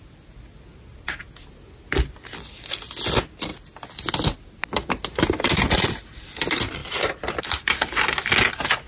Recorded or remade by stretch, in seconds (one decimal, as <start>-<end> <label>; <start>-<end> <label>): 0.0-8.9 recorded